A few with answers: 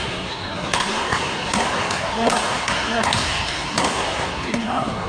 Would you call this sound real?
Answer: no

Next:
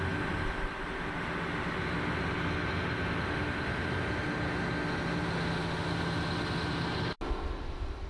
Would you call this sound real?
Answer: yes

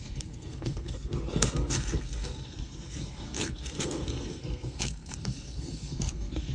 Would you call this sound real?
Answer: no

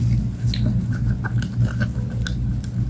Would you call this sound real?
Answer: yes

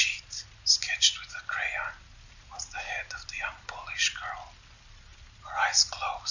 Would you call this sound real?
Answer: yes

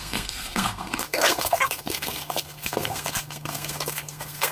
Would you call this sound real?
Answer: no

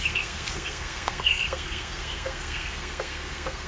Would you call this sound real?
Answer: no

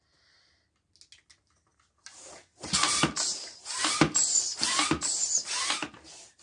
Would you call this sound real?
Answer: yes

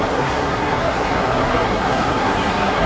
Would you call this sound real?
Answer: no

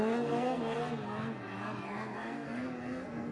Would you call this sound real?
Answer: no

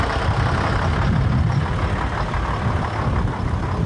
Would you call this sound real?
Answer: yes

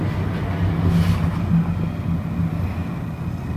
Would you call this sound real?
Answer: yes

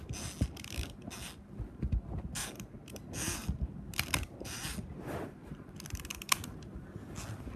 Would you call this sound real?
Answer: yes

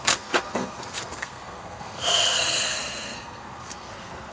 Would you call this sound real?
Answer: no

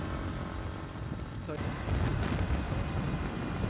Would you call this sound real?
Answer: yes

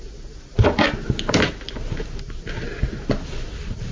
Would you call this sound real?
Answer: yes